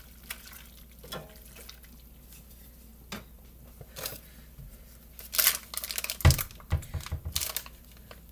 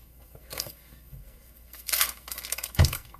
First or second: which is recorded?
first